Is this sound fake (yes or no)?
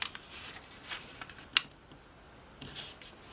no